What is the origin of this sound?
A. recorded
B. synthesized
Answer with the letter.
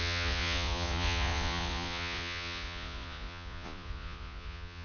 B